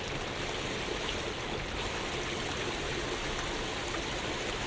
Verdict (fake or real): real